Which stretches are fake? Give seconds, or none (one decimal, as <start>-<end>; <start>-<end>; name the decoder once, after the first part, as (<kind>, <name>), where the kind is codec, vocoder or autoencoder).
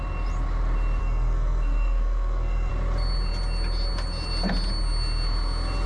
1.0-2.7 (codec, SNAC)